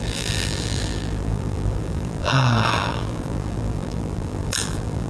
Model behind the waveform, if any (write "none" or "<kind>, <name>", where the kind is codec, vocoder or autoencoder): vocoder, BigVGAN v2